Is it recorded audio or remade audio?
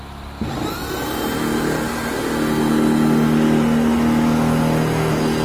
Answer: recorded